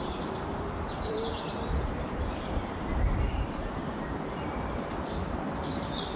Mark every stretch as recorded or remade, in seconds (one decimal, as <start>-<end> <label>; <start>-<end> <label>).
0.0-3.8 remade; 3.8-5.1 recorded; 5.1-6.2 remade